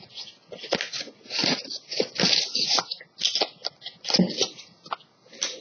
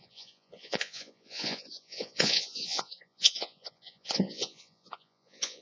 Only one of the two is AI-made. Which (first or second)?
second